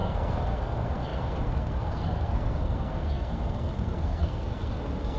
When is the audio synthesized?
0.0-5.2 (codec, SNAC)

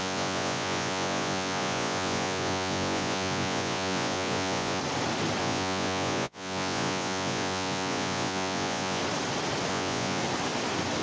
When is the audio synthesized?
0.0-4.8 (vocoder, Vocos); 5.4-9.0; 9.7-10.2

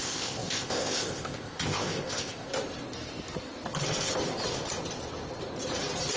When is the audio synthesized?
0.0-2.5 (codec, ZipCodec)